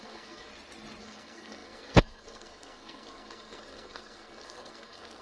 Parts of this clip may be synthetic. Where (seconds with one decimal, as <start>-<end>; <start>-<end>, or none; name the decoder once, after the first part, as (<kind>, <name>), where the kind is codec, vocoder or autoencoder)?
0.0-0.5 (codec, SNAC); 1.0-5.2